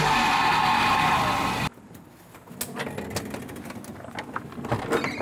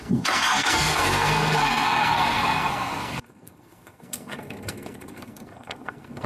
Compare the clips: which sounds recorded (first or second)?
first